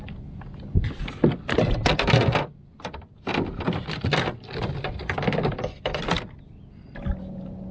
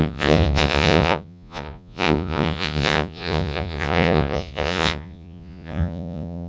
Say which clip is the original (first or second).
first